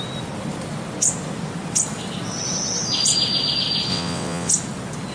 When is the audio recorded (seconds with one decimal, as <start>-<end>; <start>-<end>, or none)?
0.0-3.9; 4.5-5.1